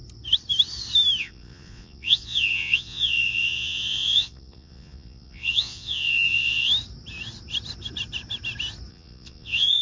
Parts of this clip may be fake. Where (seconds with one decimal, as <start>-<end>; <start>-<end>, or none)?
1.2-6.7; 8.9-9.8